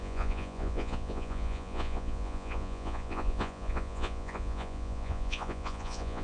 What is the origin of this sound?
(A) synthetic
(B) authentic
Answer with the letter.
A